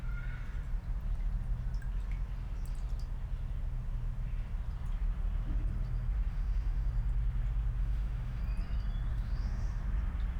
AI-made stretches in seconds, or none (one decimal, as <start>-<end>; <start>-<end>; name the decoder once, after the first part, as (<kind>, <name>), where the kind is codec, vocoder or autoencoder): 6.3-6.9 (autoencoder, DAC-VAE); 7.8-8.4; 9.1-9.8